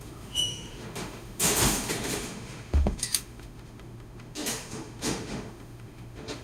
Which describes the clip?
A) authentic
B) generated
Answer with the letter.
B